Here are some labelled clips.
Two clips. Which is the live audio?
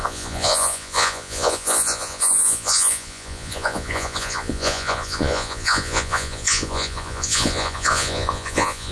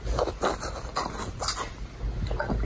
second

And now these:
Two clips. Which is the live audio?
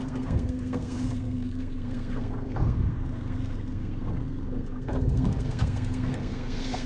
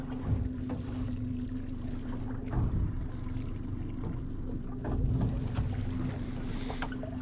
second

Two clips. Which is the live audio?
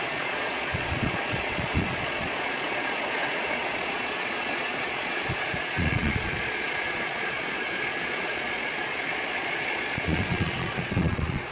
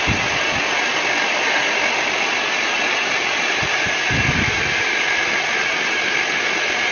second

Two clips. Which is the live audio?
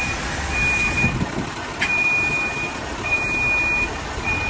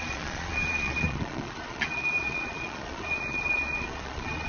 first